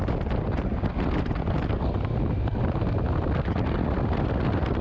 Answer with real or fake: real